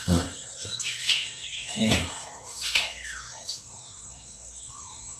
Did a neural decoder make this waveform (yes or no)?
yes